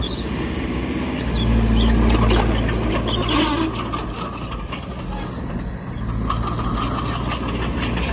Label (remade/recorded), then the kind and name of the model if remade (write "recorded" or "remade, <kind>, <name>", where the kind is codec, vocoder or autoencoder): recorded